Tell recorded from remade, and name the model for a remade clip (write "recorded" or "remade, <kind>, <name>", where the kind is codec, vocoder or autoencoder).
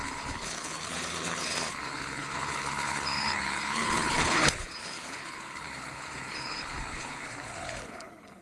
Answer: remade, codec, HILCodec